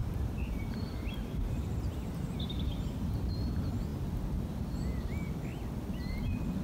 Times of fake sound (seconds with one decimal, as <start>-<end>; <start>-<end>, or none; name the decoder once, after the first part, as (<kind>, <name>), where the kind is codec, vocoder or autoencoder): 0.0-3.1 (vocoder, BigVGAN v2)